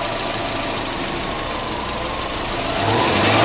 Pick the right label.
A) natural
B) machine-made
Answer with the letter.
A